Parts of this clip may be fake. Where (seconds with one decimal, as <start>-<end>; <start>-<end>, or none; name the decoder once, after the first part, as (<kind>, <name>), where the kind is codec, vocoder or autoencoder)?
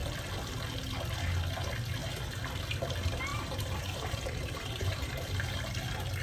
3.3-5.6 (vocoder, BigVGAN v2)